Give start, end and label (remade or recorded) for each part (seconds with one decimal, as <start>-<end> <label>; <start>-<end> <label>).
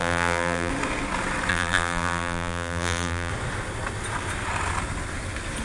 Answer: 0.0-0.7 remade; 0.7-1.5 recorded; 1.5-3.3 remade; 3.3-5.6 recorded